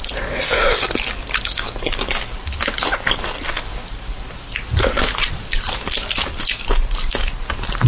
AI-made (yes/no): no